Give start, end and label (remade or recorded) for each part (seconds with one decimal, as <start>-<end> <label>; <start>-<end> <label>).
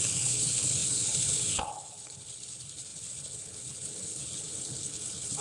0.0-5.4 remade